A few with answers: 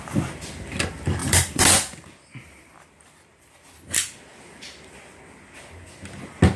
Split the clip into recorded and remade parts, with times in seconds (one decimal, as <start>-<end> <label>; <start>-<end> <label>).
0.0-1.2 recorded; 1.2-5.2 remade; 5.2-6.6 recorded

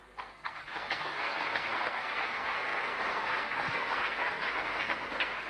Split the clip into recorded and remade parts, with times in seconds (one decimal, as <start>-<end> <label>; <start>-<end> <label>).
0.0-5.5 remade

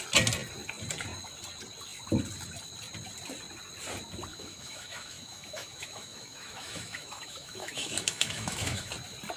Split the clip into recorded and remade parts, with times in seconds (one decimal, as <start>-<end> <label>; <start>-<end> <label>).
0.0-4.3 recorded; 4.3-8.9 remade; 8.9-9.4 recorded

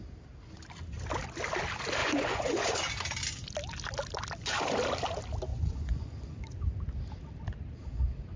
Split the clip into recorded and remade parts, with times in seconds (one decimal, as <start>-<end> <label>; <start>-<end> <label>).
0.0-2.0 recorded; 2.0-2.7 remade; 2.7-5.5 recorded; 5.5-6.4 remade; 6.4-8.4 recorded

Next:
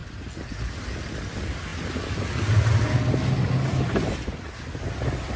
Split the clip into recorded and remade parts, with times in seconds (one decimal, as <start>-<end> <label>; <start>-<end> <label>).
0.0-5.4 recorded

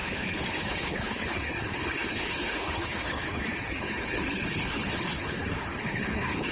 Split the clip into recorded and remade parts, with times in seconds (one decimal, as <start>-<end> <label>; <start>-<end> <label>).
0.0-6.5 remade

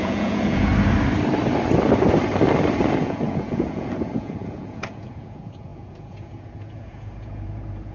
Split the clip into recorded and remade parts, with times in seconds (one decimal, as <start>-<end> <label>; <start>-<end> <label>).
0.0-0.7 remade; 0.7-3.0 recorded; 3.0-7.9 remade

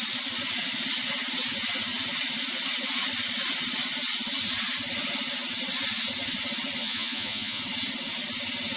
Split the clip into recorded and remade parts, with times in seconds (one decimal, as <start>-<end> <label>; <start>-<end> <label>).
0.0-6.8 recorded; 6.8-7.6 remade; 7.6-8.8 recorded